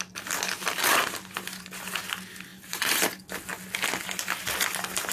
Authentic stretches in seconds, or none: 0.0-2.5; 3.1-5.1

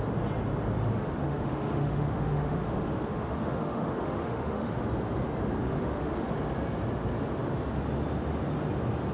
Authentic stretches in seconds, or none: 0.0-1.2; 4.8-5.6; 6.3-9.1

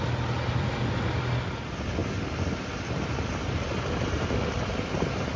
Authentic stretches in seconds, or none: 0.0-2.0

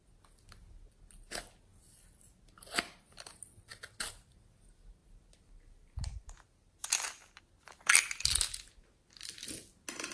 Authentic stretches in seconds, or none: 0.0-3.7; 4.6-5.0; 7.4-10.1

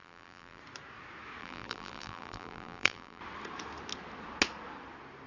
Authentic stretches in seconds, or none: 0.6-1.4; 3.2-5.3

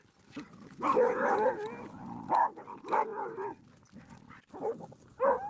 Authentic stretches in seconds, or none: 0.0-5.5

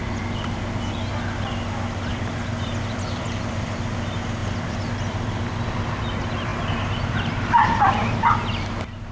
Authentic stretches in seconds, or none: 0.0-2.1; 3.8-4.4; 6.0-9.1

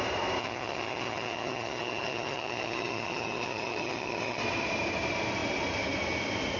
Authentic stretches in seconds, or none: 0.0-0.4; 4.4-6.6